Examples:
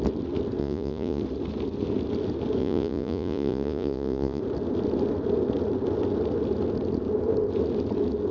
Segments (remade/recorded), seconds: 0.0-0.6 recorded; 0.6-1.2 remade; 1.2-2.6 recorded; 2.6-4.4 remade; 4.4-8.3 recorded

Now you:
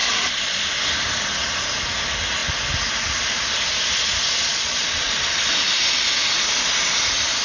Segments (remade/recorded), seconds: 0.0-0.6 remade; 0.6-4.4 recorded; 4.4-5.4 remade; 5.4-7.4 recorded

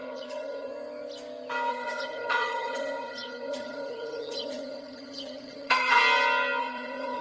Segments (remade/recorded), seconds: 0.0-0.7 remade; 0.7-1.7 recorded; 1.7-6.0 remade; 6.0-6.6 recorded; 6.6-7.2 remade

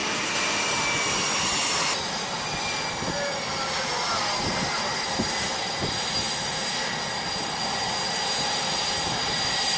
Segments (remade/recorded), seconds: 0.0-9.8 recorded

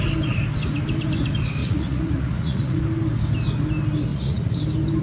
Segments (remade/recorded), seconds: 0.0-1.6 recorded; 1.6-2.8 remade; 2.8-4.1 recorded; 4.1-4.6 remade; 4.6-5.0 recorded